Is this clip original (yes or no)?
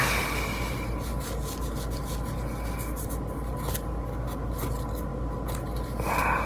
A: yes